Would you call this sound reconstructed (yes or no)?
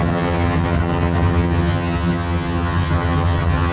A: yes